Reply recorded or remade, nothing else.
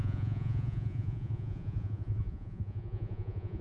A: remade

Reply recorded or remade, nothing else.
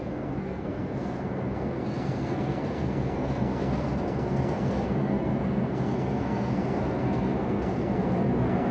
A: remade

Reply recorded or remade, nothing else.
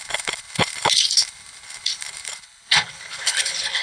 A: remade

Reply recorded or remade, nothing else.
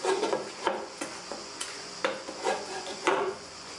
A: remade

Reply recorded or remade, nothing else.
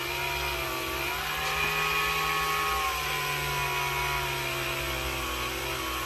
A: recorded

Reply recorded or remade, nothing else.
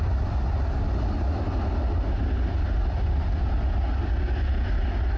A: recorded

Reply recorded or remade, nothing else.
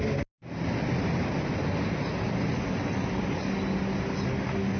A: recorded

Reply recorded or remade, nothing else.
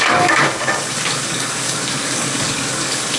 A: remade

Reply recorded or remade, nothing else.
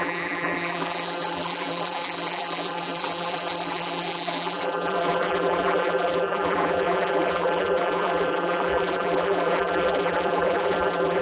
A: remade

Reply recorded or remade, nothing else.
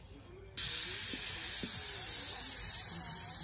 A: recorded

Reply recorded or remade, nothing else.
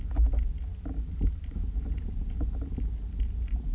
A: recorded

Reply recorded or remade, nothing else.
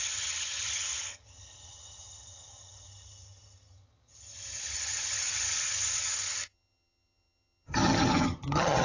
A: remade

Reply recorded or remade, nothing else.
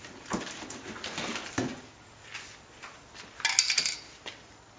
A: recorded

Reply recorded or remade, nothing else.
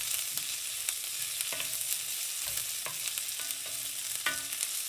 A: recorded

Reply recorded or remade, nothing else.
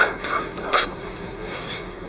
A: remade